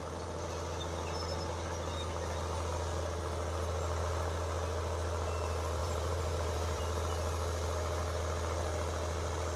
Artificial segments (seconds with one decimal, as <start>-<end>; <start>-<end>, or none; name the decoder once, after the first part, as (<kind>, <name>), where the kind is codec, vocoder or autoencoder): 5.8-6.8 (vocoder, BigVGAN v2)